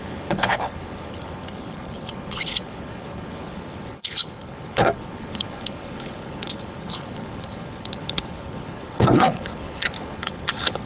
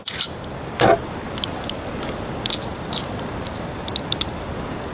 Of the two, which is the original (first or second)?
second